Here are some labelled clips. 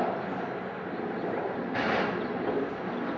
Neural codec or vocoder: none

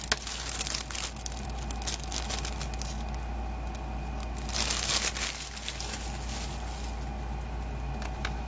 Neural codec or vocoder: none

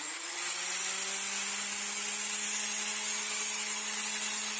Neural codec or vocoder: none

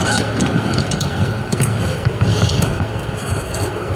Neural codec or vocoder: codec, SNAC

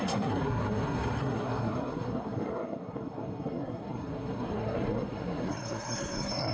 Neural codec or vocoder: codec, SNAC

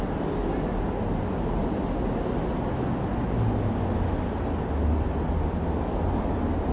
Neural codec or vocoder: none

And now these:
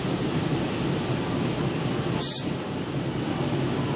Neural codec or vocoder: none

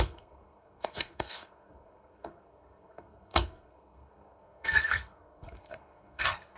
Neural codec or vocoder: codec, SNAC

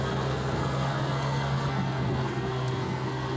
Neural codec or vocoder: codec, SNAC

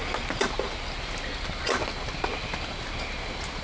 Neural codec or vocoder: none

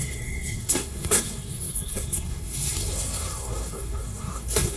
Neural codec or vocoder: codec, SNAC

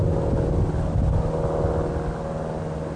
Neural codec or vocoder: none